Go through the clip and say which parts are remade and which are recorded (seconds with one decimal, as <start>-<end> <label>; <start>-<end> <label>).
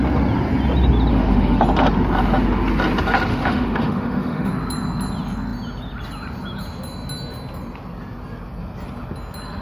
0.0-1.1 recorded; 1.1-1.6 remade; 1.6-3.3 recorded; 3.3-4.5 remade; 4.5-9.6 recorded